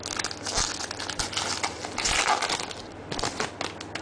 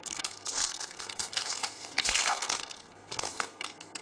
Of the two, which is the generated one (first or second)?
second